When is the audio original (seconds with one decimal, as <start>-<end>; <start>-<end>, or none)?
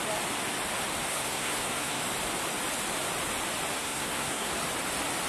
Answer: 0.0-1.1; 2.0-3.8; 4.5-5.3